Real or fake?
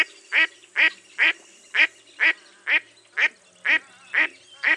real